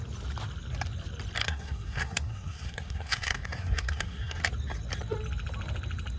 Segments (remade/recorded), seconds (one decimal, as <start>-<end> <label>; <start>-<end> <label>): 0.0-1.4 recorded; 1.4-4.4 remade; 4.4-6.2 recorded